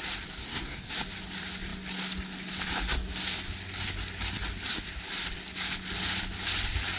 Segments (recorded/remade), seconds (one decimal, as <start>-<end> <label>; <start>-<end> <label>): 0.0-0.4 recorded; 0.4-0.9 remade; 0.9-7.0 recorded